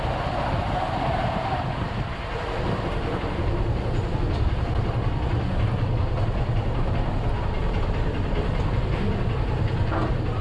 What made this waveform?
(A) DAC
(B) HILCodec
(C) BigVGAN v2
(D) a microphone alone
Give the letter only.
D